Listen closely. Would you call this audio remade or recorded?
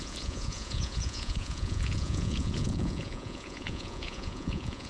remade